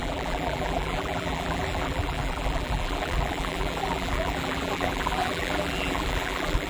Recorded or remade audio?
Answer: remade